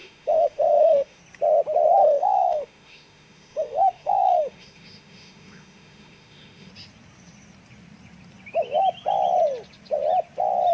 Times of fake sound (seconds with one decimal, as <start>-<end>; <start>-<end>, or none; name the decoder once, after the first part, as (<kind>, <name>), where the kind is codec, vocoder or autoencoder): 0.0-1.2 (autoencoder, DAC-VAE); 2.0-6.7

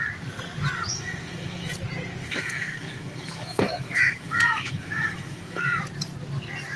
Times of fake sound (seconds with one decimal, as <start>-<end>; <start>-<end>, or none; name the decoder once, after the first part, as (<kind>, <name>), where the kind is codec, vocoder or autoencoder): 0.9-1.7 (autoencoder, DAC-VAE); 2.2-5.8

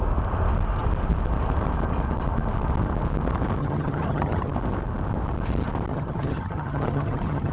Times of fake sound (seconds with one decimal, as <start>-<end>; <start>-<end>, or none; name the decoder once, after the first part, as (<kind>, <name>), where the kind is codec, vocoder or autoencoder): 3.6-4.5 (vocoder, HiFi-GAN); 5.9-7.5

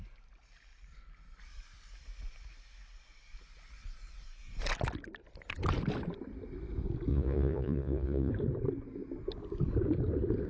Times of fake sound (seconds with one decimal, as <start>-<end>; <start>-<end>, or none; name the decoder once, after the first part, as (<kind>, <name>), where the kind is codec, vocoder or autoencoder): 7.1-8.3 (vocoder, Vocos)

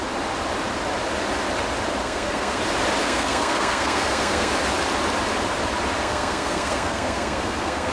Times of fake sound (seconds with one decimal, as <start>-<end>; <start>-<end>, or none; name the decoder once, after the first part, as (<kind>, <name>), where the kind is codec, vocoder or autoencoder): 2.0-2.6 (codec, SNAC); 3.0-4.5; 6.0-7.9

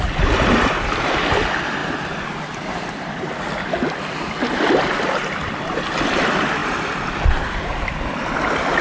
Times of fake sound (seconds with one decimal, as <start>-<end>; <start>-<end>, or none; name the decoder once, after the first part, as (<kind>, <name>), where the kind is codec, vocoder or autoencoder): 6.6-7.2 (vocoder, BigVGAN v2)

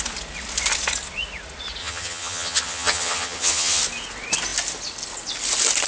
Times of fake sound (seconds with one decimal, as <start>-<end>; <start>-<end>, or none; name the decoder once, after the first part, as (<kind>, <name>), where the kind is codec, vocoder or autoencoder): 1.8-3.8 (vocoder, HiFi-GAN)

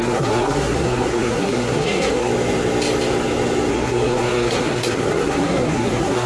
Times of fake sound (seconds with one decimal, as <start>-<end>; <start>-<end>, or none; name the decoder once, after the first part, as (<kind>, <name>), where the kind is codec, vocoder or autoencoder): 0.0-2.3 (codec, SNAC); 3.7-6.3